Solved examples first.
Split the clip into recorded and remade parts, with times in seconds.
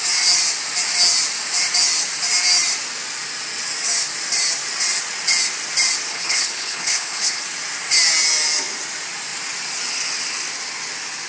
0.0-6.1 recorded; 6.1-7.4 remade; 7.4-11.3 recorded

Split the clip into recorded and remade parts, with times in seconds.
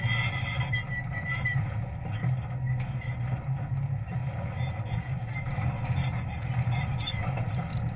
0.0-8.0 recorded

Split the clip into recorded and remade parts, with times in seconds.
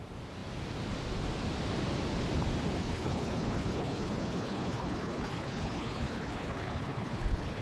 0.0-2.8 recorded; 2.8-7.6 remade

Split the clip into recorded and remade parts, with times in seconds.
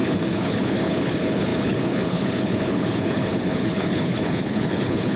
0.0-5.2 remade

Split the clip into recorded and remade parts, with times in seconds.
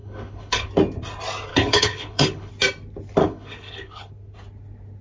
0.0-0.7 remade; 0.7-1.5 recorded; 1.5-2.5 remade; 2.5-3.2 recorded; 3.2-4.1 remade; 4.1-5.0 recorded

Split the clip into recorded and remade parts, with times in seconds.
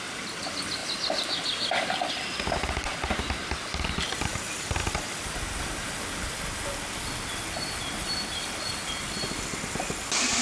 0.0-10.4 recorded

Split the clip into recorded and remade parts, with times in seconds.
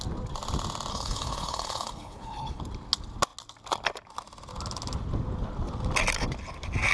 0.0-0.9 recorded; 0.9-2.6 remade; 2.6-6.9 recorded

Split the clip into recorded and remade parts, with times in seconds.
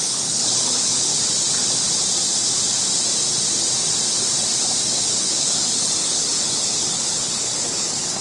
0.0-1.1 remade; 1.1-5.0 recorded; 5.0-8.2 remade